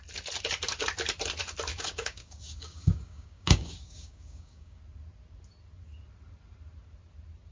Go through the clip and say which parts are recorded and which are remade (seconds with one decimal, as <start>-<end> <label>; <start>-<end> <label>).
0.0-1.7 recorded; 1.7-4.8 remade; 4.8-7.5 recorded